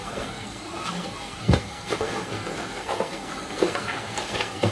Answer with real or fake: fake